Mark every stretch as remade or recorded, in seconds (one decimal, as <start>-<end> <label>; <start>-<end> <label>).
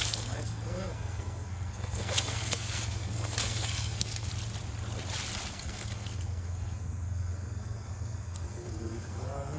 0.0-4.3 remade; 4.3-5.5 recorded; 5.5-9.6 remade